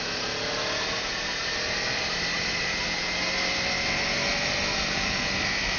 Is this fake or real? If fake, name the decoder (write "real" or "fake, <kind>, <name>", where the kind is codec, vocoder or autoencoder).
real